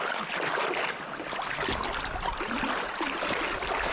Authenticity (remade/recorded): recorded